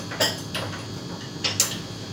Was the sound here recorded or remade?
recorded